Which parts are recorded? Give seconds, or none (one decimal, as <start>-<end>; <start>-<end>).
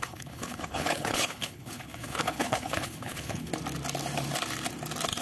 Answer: 3.5-5.2